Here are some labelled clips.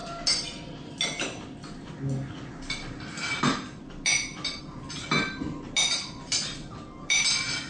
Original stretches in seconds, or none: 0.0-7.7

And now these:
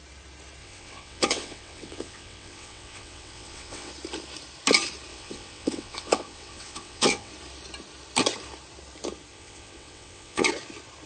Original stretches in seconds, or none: 0.0-0.6; 3.9-5.1; 7.3-9.3; 10.5-11.1

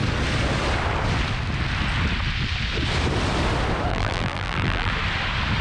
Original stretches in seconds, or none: 0.0-3.9; 4.9-5.6